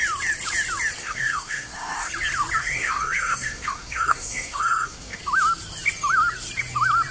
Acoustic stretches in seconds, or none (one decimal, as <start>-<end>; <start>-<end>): 0.0-1.0; 2.1-2.6; 5.2-7.1

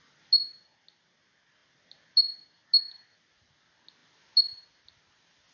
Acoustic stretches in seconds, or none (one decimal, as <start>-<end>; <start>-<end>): 0.0-5.5

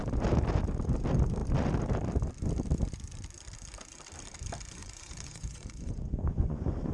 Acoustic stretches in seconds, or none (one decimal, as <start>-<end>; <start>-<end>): 0.0-4.8

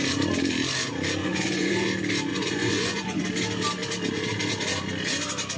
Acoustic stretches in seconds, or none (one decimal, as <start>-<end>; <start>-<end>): 0.0-1.2; 1.7-2.3; 3.2-5.6